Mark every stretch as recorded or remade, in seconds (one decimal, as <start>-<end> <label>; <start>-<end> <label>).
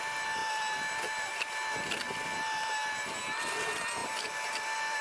0.0-5.0 recorded